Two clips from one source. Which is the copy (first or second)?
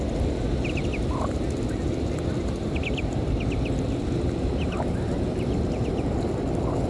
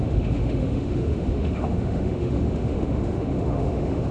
second